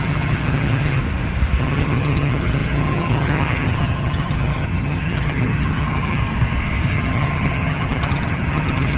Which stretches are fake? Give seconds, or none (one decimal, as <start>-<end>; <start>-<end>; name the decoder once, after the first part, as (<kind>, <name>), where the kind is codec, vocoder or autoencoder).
0.0-1.0 (vocoder, HiFi-GAN); 1.6-6.2; 6.9-9.0